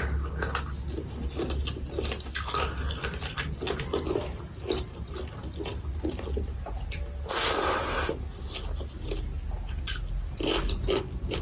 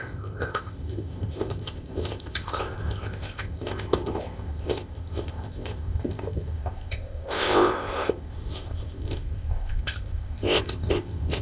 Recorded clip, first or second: first